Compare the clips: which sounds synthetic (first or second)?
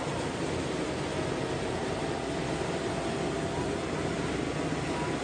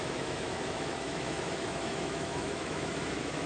second